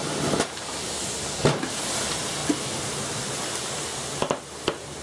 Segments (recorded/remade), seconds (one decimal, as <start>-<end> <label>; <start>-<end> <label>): 0.0-5.0 recorded